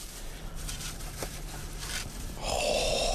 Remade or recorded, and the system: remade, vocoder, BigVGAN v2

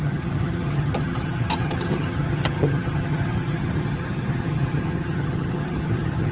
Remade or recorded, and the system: remade, vocoder, HiFi-GAN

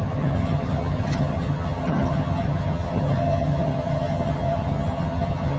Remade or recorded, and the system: remade, vocoder, HiFi-GAN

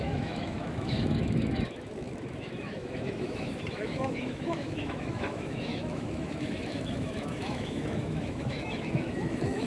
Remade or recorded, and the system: remade, autoencoder, DAC-VAE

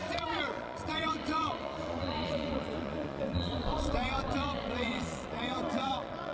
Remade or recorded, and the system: remade, vocoder, Vocos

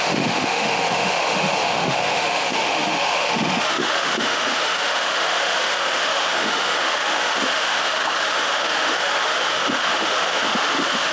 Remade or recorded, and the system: remade, autoencoder, DAC-VAE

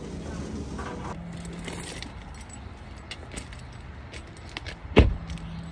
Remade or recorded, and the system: recorded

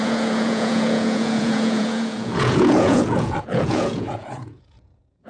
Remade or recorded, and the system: remade, vocoder, Vocos